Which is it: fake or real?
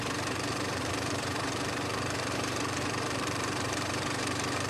fake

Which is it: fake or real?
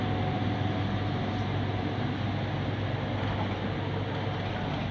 real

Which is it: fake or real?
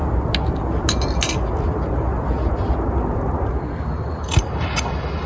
real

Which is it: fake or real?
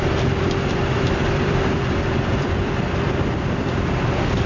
fake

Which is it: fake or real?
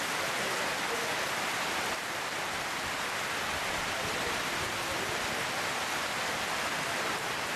real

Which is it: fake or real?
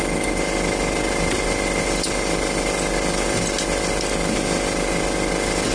real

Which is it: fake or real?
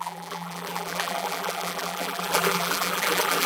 fake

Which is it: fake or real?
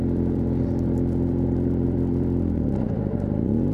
fake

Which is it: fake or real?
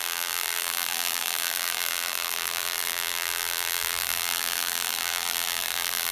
fake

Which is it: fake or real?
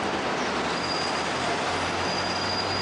real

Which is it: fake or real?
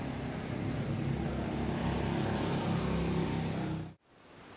real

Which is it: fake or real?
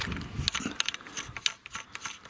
real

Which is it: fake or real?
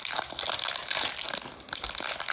real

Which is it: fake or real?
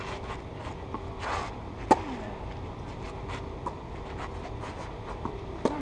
real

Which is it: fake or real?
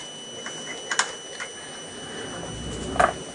real